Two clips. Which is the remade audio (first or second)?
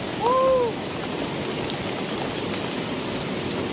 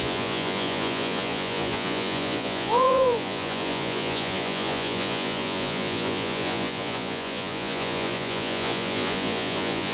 second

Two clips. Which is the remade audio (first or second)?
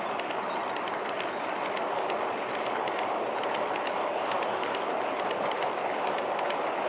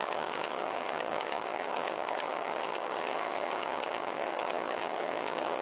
second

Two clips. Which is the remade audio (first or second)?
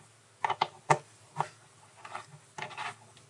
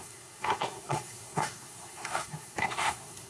second